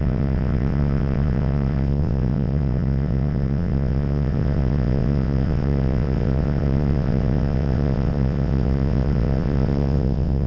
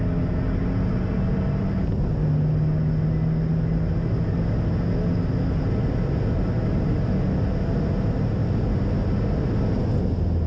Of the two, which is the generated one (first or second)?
first